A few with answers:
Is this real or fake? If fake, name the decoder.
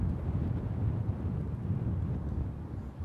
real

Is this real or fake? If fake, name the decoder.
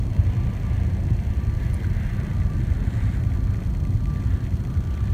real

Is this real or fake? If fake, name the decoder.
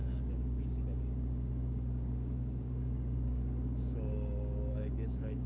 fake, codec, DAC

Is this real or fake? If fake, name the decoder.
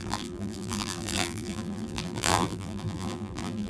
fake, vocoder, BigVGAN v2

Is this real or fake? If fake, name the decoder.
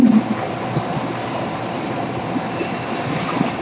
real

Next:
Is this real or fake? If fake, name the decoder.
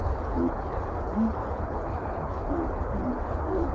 fake, codec, HILCodec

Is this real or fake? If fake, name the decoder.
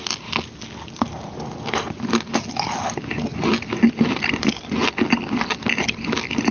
real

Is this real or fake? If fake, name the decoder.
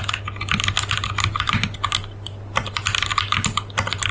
real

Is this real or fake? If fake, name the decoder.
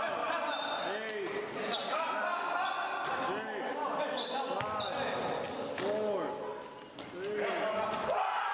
real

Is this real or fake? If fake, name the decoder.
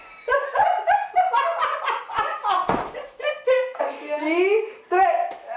real